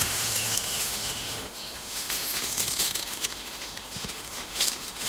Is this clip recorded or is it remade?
remade